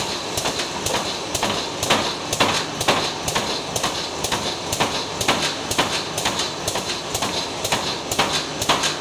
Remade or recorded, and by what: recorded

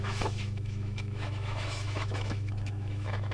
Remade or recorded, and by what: remade, autoencoder, DAC-VAE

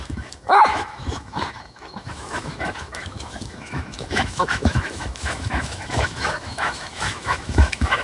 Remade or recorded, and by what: remade, autoencoder, DAC-VAE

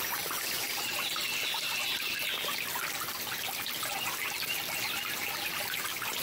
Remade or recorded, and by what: recorded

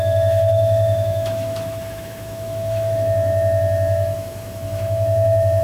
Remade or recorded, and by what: remade, autoencoder, DAC-VAE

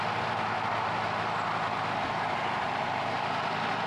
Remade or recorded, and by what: recorded